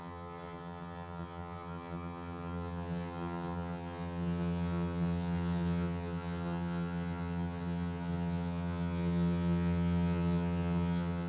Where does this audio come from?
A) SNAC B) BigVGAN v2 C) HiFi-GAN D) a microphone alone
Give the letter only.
C